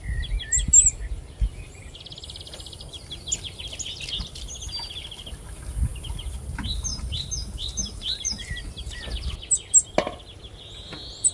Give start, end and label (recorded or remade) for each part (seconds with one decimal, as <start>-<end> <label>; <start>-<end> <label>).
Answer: 0.0-1.5 recorded; 1.5-2.4 remade; 2.4-6.9 recorded; 6.9-9.0 remade; 9.0-11.3 recorded